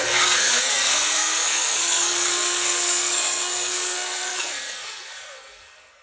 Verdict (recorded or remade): remade